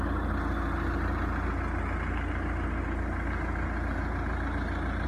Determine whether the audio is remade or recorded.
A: recorded